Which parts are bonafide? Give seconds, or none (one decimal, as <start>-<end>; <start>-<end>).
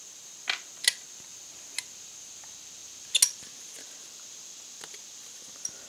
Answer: 0.0-5.9